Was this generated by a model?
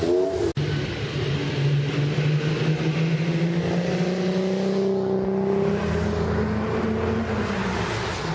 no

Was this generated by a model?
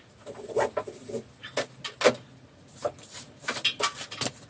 no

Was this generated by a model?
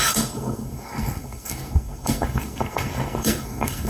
yes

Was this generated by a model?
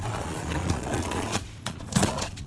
yes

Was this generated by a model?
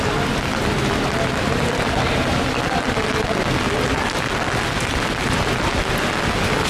no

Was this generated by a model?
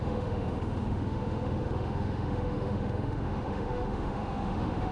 yes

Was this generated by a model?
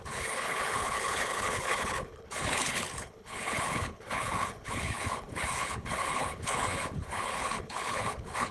yes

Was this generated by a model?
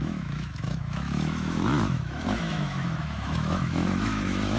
yes